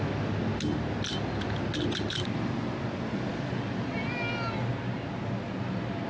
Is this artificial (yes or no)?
no